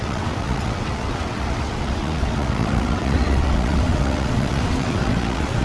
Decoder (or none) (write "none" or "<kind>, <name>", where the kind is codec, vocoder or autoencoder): vocoder, WaveNeXt